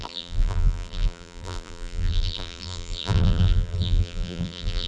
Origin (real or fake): fake